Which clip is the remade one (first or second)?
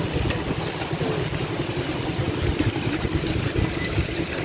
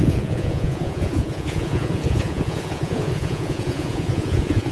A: second